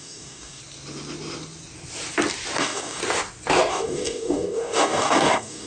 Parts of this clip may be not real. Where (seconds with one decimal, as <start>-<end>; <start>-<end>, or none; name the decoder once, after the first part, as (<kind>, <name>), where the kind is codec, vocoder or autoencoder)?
0.0-0.6 (codec, DAC); 2.6-3.0; 3.7-5.7